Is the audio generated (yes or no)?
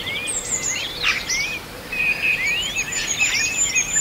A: no